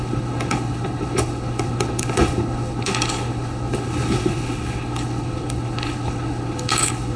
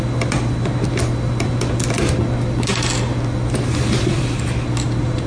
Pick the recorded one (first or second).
second